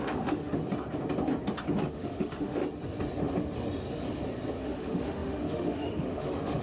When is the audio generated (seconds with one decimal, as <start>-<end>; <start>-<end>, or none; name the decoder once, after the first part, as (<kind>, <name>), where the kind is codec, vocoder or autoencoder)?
0.0-0.6 (autoencoder, DAC-VAE); 1.8-2.6; 4.6-6.6